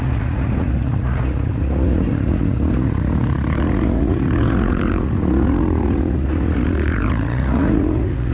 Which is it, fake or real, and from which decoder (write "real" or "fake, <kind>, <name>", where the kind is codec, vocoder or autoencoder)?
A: fake, vocoder, Vocos